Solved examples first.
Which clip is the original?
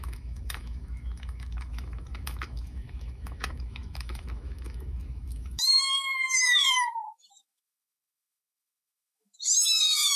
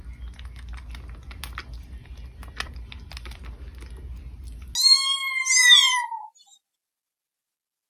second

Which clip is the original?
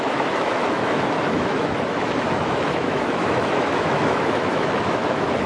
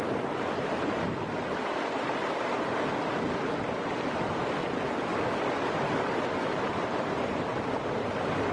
second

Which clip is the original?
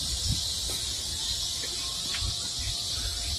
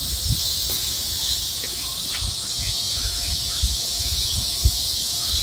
first